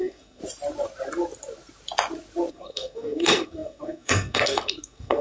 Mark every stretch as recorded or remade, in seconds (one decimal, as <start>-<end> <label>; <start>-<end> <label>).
0.0-0.4 remade; 0.4-2.5 recorded; 2.5-5.2 remade